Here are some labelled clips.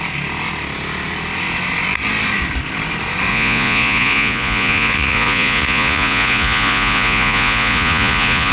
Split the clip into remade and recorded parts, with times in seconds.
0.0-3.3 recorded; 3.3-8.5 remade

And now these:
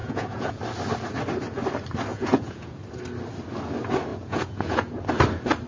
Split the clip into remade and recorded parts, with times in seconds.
0.0-0.6 remade; 0.6-2.1 recorded; 2.1-2.8 remade; 2.8-4.1 recorded; 4.1-5.0 remade; 5.0-5.7 recorded

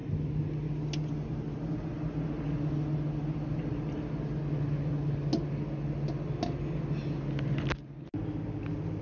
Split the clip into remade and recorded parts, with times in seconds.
0.0-9.0 recorded

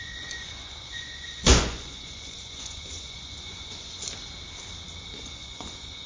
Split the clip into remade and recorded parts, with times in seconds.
0.0-4.0 remade; 4.0-5.2 recorded; 5.2-6.1 remade

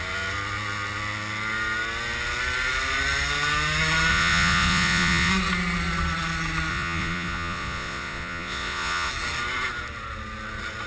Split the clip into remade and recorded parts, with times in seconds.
0.0-4.1 recorded; 4.1-5.3 remade; 5.3-6.7 recorded; 6.7-9.1 remade; 9.1-10.9 recorded